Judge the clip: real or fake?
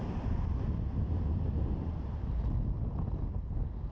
real